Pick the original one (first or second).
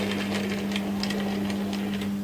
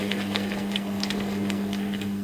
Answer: first